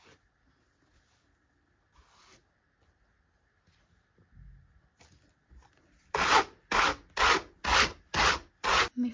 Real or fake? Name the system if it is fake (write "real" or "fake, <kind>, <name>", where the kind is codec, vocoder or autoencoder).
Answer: real